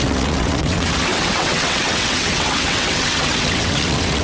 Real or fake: fake